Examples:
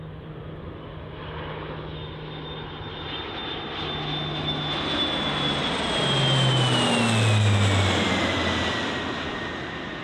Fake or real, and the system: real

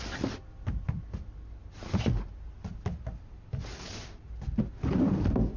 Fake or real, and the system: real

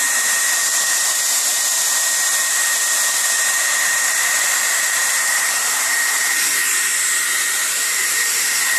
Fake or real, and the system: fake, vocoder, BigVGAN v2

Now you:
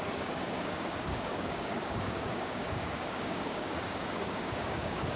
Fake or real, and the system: fake, codec, DAC